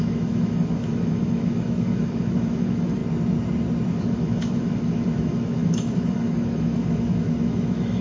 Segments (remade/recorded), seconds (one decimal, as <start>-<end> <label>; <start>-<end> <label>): 0.0-3.0 remade; 3.0-3.9 recorded; 3.9-8.0 remade